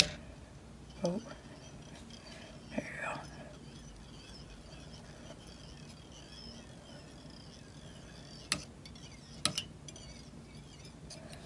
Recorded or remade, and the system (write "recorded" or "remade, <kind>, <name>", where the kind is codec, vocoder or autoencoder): recorded